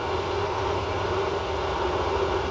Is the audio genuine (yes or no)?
yes